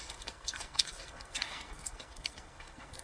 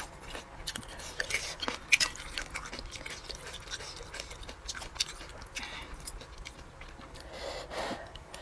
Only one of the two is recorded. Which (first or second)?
second